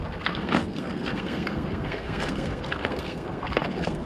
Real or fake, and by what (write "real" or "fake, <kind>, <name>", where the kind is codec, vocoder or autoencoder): fake, codec, SNAC